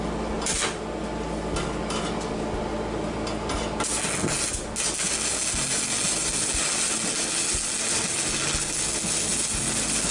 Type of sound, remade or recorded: recorded